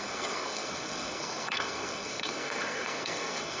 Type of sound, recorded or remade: remade